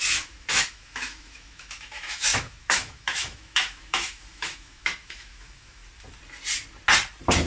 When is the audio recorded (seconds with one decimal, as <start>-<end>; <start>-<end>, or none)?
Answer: 5.8-7.5